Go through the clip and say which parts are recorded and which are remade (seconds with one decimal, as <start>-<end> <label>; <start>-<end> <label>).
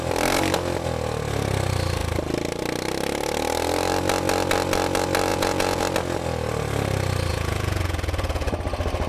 0.0-5.3 recorded; 5.3-5.8 remade; 5.8-7.3 recorded; 7.3-8.5 remade; 8.5-9.1 recorded